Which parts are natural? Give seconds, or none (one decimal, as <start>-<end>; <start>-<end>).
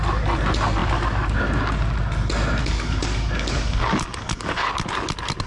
0.0-2.6; 4.7-5.5